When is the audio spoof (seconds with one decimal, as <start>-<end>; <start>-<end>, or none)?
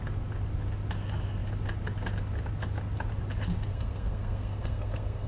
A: 3.7-5.3